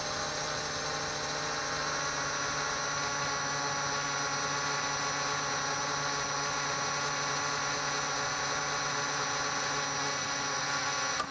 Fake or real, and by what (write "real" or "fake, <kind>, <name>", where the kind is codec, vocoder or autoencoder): real